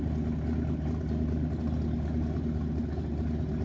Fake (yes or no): no